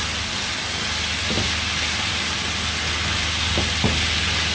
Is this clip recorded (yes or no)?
yes